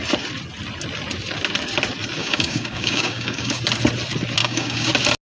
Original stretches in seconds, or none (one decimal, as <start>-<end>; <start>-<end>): 0.0-2.2; 3.6-4.4; 4.9-5.4